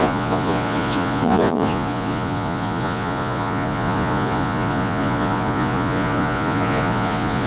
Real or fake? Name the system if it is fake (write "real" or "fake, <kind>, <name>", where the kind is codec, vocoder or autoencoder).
fake, vocoder, Vocos